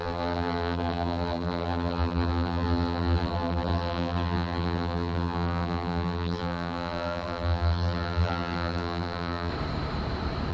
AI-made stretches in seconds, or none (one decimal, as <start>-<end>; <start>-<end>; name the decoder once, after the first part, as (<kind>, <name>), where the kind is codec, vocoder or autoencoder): 0.0-9.5 (vocoder, BigVGAN v2)